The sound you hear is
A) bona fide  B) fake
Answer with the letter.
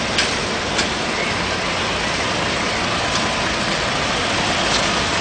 A